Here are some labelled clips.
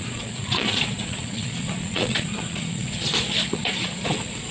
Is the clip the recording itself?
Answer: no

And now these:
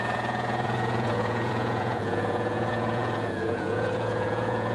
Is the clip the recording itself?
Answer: no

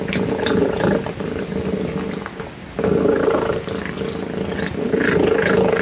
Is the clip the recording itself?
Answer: yes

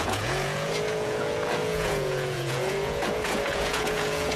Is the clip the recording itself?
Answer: no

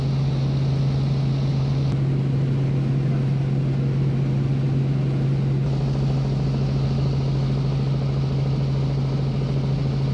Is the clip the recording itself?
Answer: yes